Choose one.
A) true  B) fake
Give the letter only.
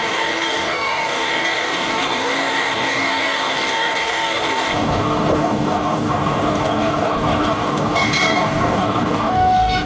B